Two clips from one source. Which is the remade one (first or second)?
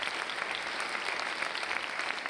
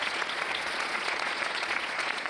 second